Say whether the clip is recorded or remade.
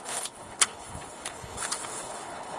remade